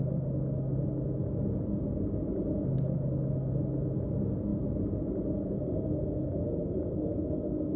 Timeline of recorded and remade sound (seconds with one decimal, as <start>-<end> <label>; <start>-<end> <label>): 0.0-7.8 recorded